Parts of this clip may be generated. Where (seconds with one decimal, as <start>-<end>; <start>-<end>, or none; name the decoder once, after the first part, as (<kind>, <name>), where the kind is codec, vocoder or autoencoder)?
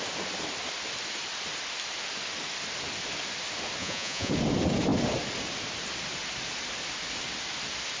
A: 3.8-4.3 (vocoder, Vocos)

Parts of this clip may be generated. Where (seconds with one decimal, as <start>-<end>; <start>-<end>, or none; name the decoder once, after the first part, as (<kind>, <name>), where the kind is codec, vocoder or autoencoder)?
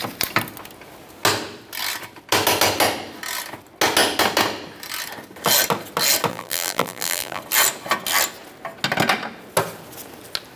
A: 6.3-7.4 (vocoder, BigVGAN v2)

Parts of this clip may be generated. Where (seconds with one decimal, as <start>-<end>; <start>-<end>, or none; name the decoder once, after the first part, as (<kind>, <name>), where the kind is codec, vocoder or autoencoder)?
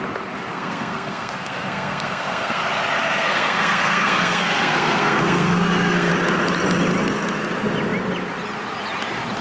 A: 0.5-2.6 (codec, SNAC); 3.0-6.1